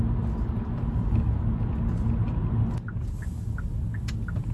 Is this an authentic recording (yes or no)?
yes